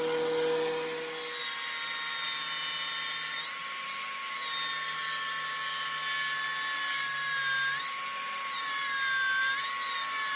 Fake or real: real